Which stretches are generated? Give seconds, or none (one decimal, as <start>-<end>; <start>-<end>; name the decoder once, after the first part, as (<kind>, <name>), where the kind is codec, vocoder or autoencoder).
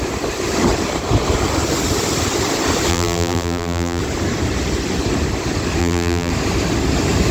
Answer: 2.9-4.0 (vocoder, BigVGAN v2); 5.8-6.3